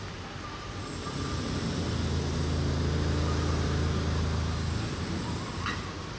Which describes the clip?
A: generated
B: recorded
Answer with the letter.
B